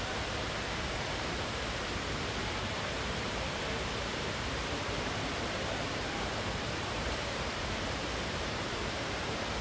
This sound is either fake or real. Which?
fake